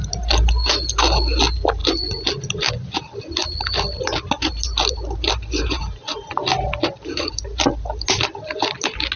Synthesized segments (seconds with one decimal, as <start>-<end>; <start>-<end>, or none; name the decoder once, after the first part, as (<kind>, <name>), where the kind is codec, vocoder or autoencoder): none